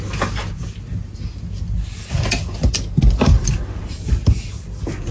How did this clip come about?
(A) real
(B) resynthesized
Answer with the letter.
A